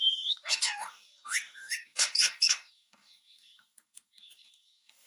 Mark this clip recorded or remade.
remade